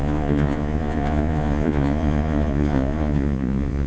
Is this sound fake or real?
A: fake